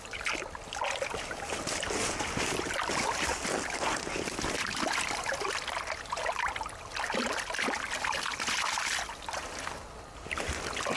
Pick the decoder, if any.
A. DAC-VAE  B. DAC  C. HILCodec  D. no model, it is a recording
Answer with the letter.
D